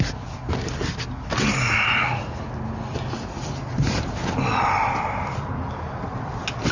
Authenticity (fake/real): real